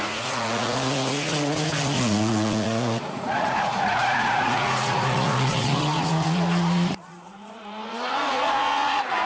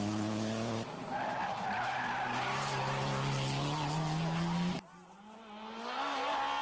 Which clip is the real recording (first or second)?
second